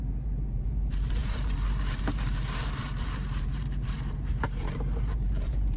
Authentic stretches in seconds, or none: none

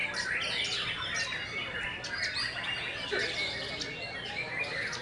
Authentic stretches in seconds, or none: 0.0-0.9; 1.6-4.6

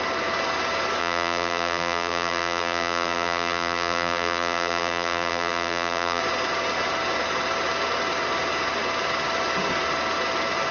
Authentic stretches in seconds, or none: 0.0-1.0; 6.2-10.7

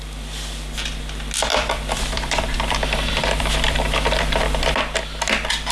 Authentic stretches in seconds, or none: 0.0-1.5; 4.7-5.7

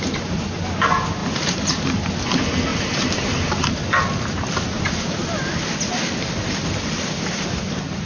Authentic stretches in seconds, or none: 0.0-2.7; 3.9-8.1

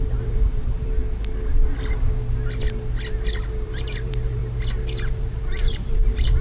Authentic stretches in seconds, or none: 1.0-3.6; 4.4-5.2

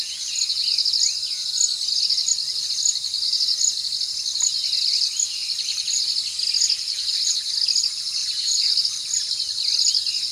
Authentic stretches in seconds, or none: 0.0-8.2; 9.0-10.3